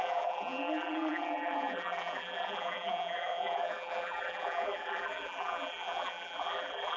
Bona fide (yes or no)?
no